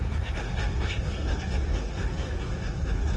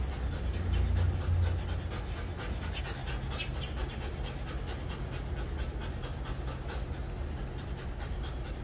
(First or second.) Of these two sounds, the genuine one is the second